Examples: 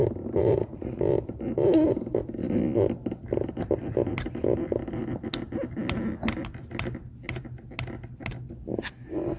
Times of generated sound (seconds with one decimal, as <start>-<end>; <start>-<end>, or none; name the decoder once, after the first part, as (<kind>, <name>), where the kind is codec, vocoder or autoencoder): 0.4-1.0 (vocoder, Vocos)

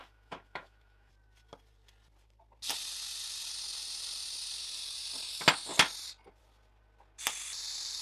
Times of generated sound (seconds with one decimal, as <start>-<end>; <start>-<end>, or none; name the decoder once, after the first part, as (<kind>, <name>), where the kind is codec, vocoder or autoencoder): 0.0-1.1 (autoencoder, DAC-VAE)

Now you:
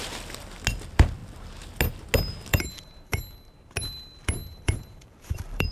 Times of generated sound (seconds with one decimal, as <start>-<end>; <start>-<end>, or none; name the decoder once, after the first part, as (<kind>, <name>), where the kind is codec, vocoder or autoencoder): 2.5-3.2 (vocoder, BigVGAN v2); 4.5-5.7

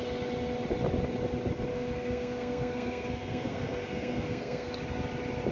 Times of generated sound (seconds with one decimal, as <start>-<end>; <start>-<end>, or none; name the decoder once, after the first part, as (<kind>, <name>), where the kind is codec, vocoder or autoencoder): 1.7-4.7 (codec, SNAC)